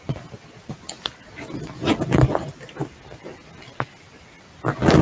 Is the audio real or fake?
real